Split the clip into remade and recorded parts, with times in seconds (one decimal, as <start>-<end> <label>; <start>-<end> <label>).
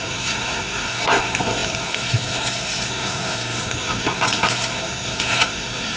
0.0-6.0 remade